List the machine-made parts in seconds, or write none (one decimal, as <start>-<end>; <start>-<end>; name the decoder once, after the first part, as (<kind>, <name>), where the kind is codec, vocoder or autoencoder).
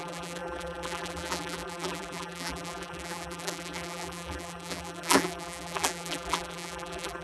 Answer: 0.0-7.2 (vocoder, BigVGAN v2)